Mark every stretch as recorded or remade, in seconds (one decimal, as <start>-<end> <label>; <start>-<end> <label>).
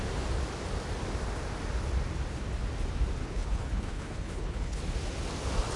0.0-3.2 recorded; 3.2-4.8 remade; 4.8-5.8 recorded